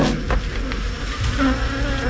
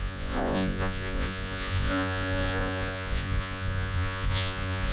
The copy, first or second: second